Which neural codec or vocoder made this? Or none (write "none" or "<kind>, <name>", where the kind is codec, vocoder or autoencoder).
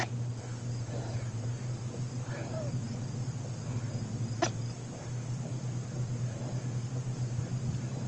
none